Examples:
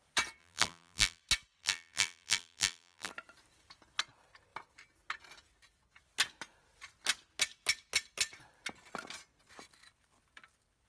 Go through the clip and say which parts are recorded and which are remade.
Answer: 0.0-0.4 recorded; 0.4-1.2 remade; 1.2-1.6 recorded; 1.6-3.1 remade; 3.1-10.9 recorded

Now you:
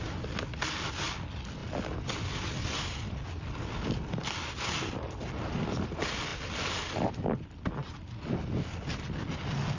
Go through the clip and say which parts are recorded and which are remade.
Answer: 0.0-1.6 recorded; 1.6-3.6 remade; 3.6-9.8 recorded

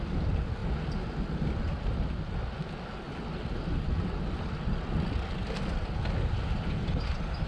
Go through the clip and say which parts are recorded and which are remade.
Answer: 0.0-7.5 recorded

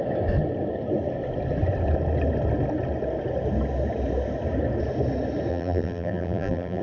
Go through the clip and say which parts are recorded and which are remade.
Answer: 0.0-5.5 recorded; 5.5-6.8 remade